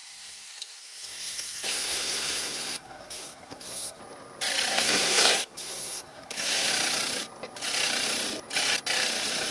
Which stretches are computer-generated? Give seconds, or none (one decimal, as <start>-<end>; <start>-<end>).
0.0-4.0; 4.7-6.7